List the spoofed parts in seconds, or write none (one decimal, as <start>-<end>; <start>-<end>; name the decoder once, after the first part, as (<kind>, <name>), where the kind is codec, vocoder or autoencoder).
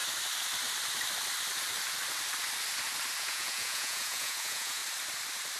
3.2-4.8 (vocoder, Vocos)